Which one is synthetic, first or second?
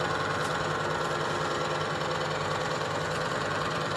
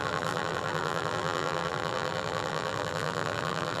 second